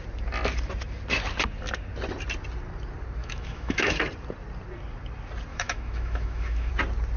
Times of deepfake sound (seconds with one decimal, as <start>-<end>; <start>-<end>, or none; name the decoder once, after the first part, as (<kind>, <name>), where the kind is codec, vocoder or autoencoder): 3.2-4.0 (autoencoder, DAC-VAE); 5.5-6.7